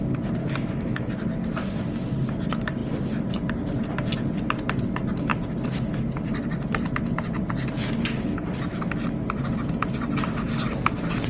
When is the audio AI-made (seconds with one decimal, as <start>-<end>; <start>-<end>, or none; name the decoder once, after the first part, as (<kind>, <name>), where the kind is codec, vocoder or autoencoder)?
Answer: 0.4-1.1 (autoencoder, DAC-VAE)